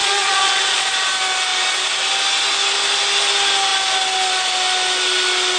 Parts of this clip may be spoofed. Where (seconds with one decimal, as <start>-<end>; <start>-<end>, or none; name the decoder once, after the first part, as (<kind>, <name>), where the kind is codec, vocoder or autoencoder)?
0.0-0.9 (vocoder, Vocos)